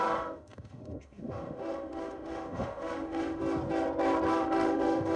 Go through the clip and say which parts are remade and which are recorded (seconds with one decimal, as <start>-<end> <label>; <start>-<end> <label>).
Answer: 0.0-3.4 remade; 3.4-4.3 recorded; 4.3-5.2 remade